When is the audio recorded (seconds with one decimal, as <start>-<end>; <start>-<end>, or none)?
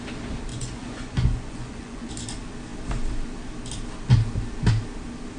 0.0-0.5; 2.1-5.4